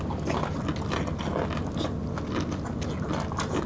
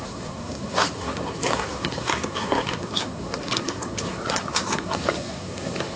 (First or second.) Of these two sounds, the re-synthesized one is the second